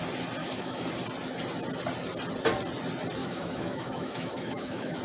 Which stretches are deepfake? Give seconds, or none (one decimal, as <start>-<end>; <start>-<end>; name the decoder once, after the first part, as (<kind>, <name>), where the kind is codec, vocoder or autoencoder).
0.4-0.9 (autoencoder, DAC-VAE); 3.2-5.0